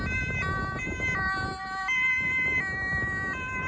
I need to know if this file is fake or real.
real